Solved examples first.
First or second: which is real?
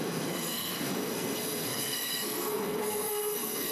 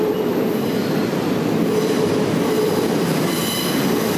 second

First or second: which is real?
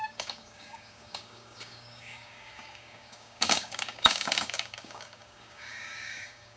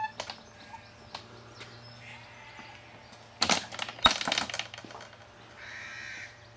second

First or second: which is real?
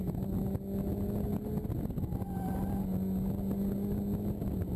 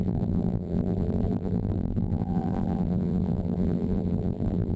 first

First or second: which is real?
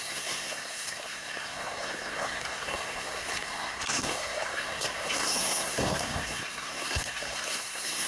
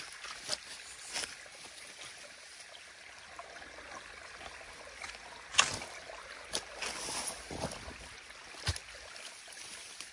second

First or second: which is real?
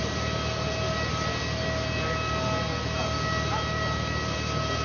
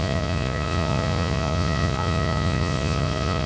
first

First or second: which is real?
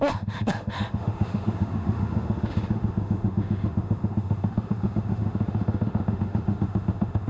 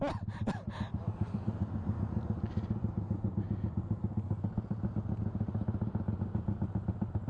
second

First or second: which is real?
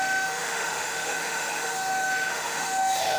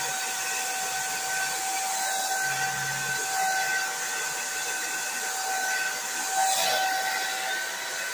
second